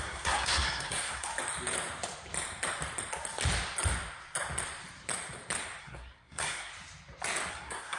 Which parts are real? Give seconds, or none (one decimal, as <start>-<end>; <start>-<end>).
1.3-5.8; 6.7-7.5